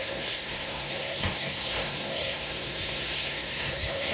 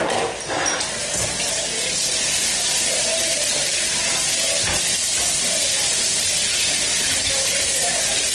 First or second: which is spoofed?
first